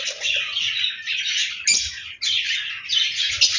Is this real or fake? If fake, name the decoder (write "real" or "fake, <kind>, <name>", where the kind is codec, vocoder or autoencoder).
real